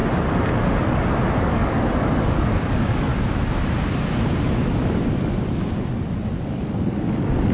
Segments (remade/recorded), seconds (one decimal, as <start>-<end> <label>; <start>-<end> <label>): 0.0-1.4 recorded; 1.4-3.1 remade; 3.1-6.5 recorded; 6.5-7.5 remade